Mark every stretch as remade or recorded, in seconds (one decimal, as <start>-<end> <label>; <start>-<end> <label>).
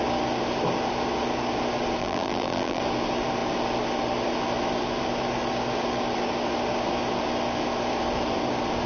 0.0-2.0 recorded; 2.0-2.8 remade; 2.8-8.9 recorded